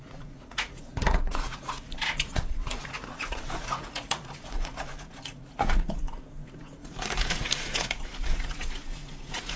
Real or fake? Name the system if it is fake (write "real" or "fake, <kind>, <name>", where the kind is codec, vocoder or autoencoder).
fake, vocoder, Vocos